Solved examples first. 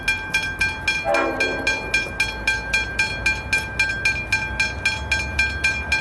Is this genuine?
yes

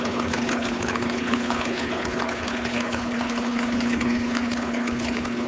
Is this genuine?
no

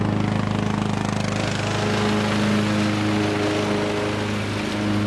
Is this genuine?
yes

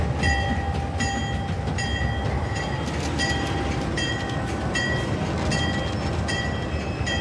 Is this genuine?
yes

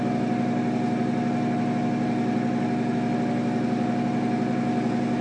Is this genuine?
yes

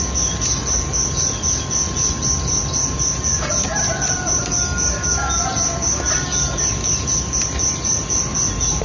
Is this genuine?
yes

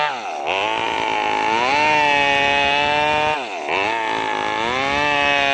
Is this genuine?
yes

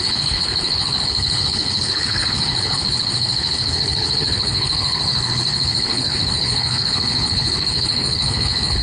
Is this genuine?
no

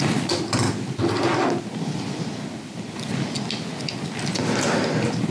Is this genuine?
yes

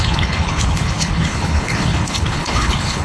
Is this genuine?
no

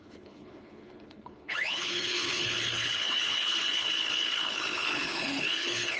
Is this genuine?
no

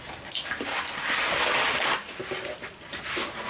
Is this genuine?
yes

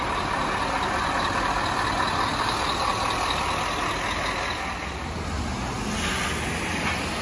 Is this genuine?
yes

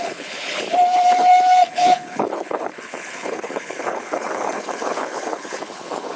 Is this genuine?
no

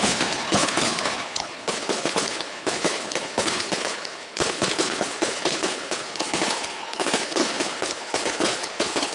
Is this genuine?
no